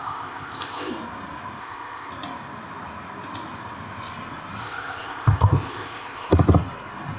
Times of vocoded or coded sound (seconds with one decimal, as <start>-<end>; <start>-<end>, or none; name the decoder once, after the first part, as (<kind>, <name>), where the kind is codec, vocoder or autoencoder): 0.0-0.9 (codec, ZipCodec); 1.6-2.1; 4.6-6.3